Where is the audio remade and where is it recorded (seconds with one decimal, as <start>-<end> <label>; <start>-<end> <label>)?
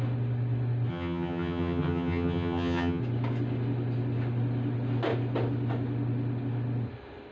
0.0-0.9 recorded; 0.9-3.0 remade; 3.0-7.3 recorded